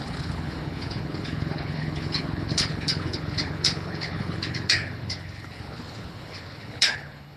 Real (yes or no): no